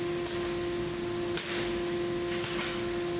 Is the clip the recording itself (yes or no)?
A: yes